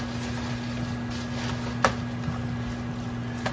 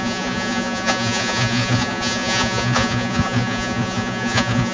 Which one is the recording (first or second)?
first